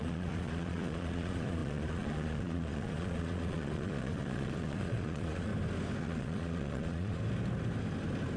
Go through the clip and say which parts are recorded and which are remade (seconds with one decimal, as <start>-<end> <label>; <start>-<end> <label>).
0.0-5.5 remade; 5.5-6.0 recorded; 6.0-7.2 remade; 7.2-8.4 recorded